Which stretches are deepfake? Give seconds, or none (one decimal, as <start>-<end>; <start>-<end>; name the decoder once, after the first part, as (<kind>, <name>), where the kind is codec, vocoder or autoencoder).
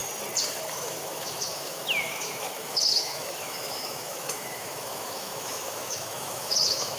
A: 0.7-7.0 (autoencoder, DAC-VAE)